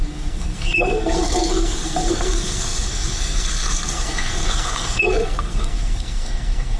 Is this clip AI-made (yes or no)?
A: yes